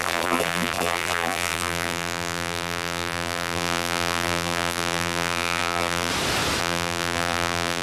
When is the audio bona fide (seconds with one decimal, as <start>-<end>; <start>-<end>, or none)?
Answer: 6.1-6.6